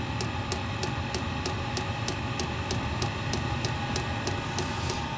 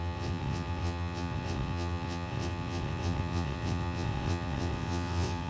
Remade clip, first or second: second